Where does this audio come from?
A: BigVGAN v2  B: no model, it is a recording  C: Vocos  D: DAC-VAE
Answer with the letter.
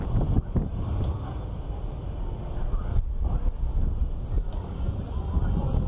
B